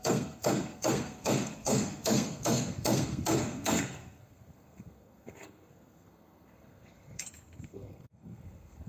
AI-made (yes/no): yes